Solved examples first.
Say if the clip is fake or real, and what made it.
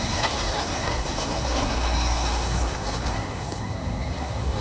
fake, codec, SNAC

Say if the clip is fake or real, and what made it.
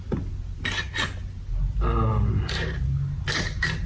real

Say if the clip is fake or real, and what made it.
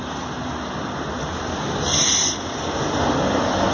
real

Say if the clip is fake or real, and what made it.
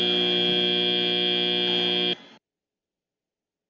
real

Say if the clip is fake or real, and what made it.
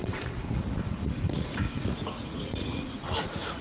fake, vocoder, Vocos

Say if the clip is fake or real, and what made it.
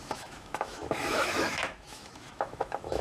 fake, autoencoder, DAC-VAE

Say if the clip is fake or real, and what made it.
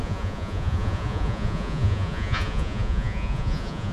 fake, vocoder, Vocos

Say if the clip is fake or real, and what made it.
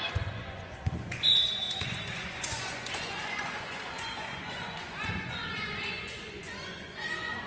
fake, vocoder, Vocos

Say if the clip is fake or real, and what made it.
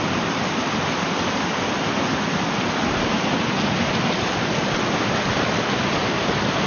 real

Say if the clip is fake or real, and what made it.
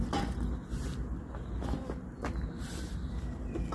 real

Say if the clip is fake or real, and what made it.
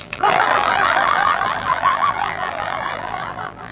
fake, vocoder, BigVGAN v2